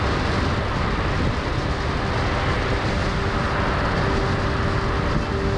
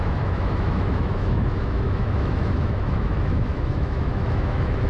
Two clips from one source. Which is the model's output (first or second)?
second